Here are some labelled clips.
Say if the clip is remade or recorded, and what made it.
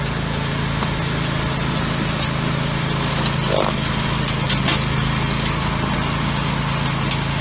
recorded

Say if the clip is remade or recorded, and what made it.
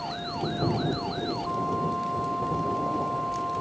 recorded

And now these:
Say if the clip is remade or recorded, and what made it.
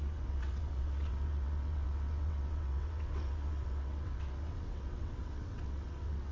remade, vocoder, WaveNeXt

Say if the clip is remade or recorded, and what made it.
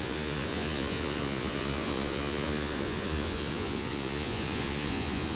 remade, vocoder, Vocos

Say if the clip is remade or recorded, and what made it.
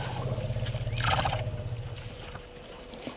remade, vocoder, BigVGAN v2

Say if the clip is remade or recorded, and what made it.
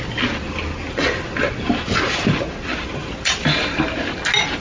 recorded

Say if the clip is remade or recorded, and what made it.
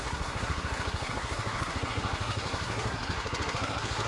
remade, codec, SNAC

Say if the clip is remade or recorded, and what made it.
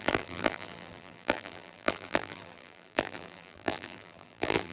remade, vocoder, BigVGAN v2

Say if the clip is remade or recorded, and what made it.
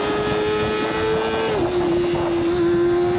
recorded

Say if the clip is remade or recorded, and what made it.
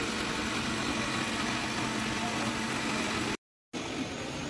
recorded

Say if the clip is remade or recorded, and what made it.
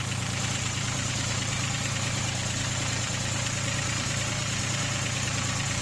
remade, vocoder, BigVGAN v2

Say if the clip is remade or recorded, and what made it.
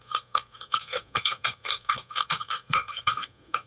remade, codec, SNAC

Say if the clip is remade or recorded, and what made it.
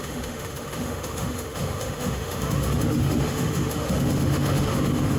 remade, autoencoder, DAC-VAE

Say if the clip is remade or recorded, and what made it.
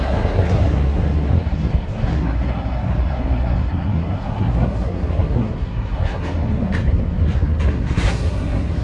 remade, codec, SNAC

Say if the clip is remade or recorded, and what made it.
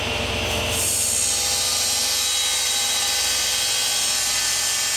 recorded